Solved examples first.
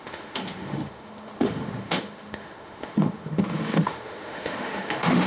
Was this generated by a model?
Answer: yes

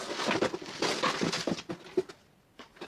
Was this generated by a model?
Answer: no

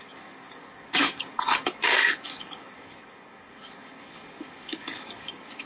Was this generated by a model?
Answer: yes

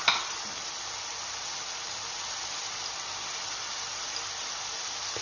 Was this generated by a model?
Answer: no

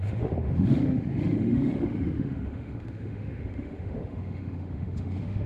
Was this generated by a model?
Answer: yes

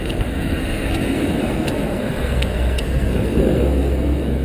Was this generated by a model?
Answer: yes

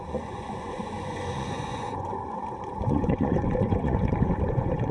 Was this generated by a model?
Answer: yes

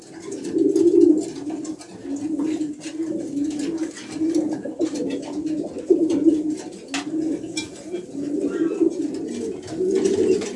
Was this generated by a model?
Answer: no